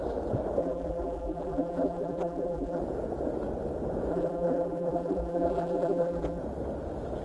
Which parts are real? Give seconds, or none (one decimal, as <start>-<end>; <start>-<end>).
0.0-0.6; 2.8-4.1; 6.4-7.2